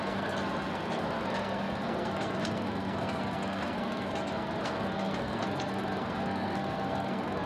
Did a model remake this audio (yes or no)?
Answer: yes